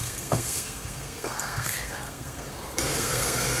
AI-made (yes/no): yes